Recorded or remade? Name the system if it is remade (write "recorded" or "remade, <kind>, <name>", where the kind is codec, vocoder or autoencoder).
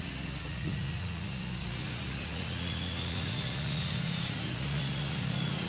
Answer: remade, vocoder, Vocos